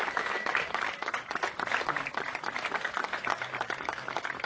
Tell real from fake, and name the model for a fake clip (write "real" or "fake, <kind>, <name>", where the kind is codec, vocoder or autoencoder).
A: fake, codec, DAC